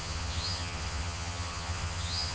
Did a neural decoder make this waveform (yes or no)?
yes